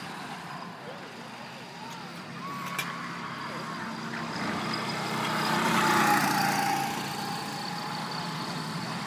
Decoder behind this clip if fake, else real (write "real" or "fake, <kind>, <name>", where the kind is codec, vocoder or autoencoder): real